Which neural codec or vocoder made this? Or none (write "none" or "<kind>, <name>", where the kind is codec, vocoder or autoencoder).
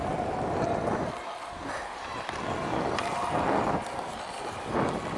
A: none